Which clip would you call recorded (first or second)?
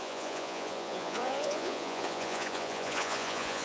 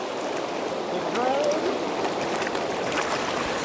second